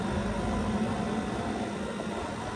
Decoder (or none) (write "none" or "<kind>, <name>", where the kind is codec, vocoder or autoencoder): none